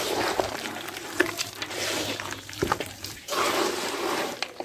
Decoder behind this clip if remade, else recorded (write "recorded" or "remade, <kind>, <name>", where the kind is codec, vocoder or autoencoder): remade, vocoder, BigVGAN v2